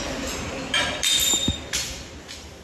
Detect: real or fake real